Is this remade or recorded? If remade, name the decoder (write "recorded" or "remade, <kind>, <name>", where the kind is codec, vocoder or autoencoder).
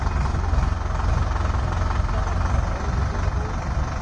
recorded